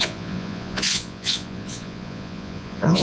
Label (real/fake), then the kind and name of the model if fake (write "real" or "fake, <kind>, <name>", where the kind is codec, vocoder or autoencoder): fake, vocoder, Vocos